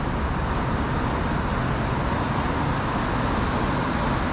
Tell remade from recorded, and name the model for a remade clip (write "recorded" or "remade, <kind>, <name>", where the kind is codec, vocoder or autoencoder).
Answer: recorded